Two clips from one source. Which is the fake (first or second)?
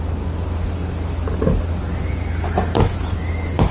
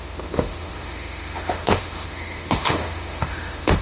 second